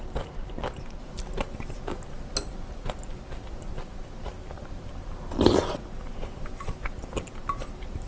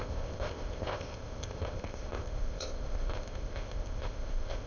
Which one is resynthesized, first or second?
second